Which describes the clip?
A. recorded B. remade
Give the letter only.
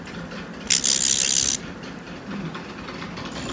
A